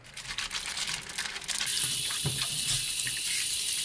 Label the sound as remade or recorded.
recorded